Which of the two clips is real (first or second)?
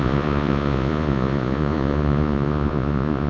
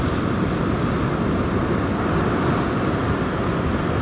second